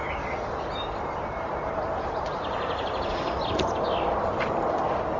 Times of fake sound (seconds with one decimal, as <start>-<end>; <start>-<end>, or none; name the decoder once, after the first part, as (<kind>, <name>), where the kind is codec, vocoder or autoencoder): none